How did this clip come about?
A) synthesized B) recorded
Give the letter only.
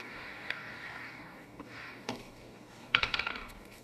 A